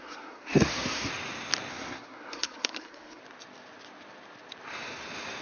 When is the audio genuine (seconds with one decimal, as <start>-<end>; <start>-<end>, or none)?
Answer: 1.1-1.7; 3.2-5.4